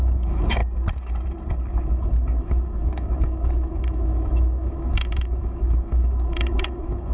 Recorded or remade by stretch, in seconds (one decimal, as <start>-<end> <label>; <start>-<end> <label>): 0.0-0.6 remade; 0.6-2.4 recorded; 2.4-7.1 remade